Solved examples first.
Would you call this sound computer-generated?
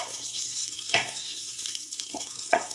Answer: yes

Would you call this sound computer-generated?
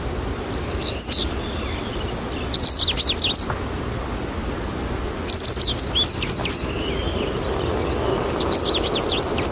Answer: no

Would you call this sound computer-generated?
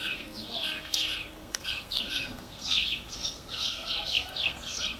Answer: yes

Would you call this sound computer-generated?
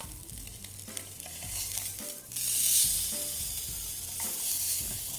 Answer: no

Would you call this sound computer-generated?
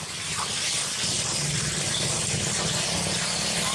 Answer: no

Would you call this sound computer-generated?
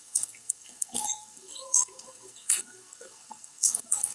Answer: yes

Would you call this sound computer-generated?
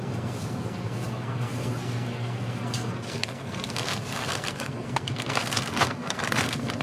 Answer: yes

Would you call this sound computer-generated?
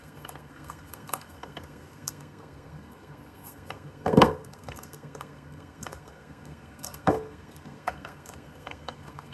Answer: yes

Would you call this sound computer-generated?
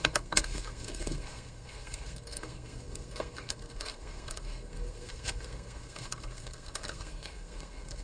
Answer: yes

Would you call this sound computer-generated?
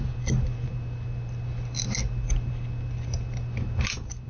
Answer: no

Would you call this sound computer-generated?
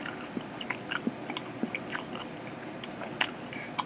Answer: no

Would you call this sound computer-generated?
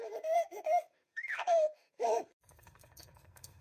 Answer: yes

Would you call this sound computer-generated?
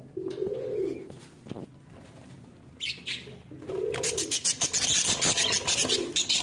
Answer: no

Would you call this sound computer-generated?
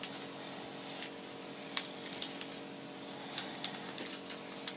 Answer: no